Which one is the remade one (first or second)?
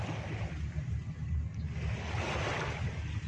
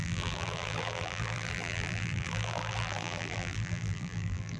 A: second